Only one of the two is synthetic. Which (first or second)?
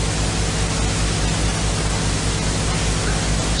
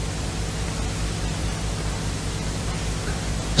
second